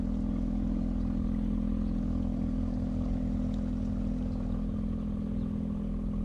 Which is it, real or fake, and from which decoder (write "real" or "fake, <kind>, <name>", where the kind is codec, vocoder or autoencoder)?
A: real